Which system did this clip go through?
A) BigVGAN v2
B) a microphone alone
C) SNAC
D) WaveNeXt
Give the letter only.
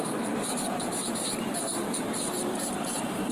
A